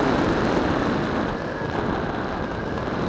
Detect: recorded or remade recorded